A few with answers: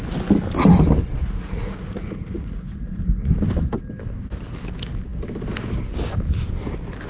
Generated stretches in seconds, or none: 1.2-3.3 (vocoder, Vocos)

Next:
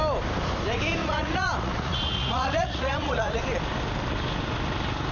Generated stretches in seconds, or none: 1.0-3.4 (vocoder, Vocos)

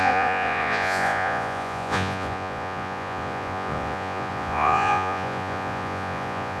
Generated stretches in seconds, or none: 0.0-6.6 (vocoder, Vocos)

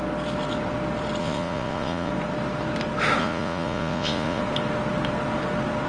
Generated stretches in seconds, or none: 1.2-2.1 (vocoder, Vocos); 3.2-4.4